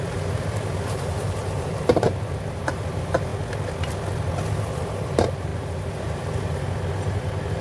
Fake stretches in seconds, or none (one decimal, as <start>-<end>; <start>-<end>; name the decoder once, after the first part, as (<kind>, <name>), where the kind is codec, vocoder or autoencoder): 0.0-3.3 (vocoder, BigVGAN v2); 4.6-7.6